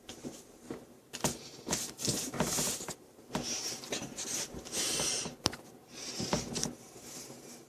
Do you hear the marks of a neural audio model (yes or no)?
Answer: yes